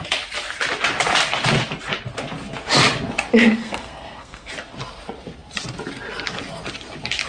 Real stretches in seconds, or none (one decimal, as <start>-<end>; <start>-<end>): 0.0-3.6; 4.5-7.3